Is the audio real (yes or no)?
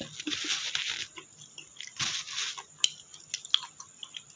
yes